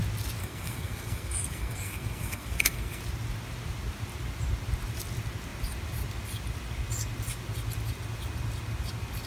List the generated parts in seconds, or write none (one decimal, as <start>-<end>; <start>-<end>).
0.4-3.0